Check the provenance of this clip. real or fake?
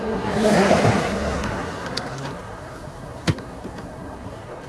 fake